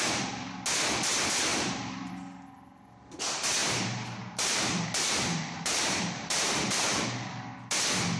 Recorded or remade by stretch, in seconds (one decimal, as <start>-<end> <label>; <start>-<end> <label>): 0.0-1.5 recorded; 1.5-2.1 remade; 2.1-3.6 recorded; 3.6-7.0 remade; 7.0-8.2 recorded